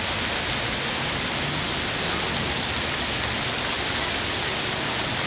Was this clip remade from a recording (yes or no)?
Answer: no